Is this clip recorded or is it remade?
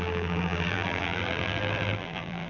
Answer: remade